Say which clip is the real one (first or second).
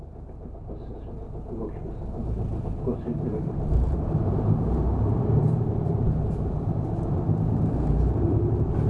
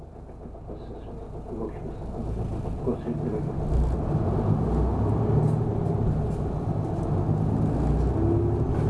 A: second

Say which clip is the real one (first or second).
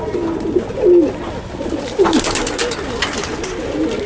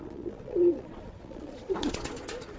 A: first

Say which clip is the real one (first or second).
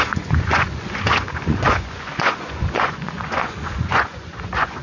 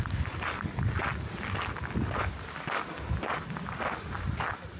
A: second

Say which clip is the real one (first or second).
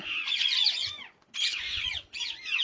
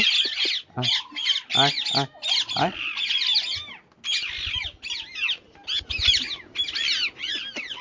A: second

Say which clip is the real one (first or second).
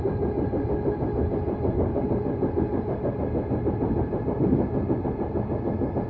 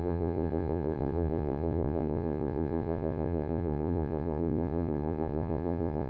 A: first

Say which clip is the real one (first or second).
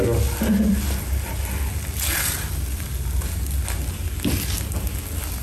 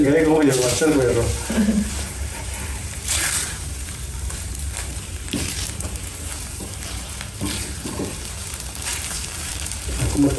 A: first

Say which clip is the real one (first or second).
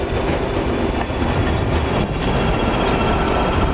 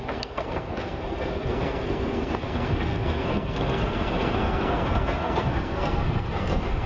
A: first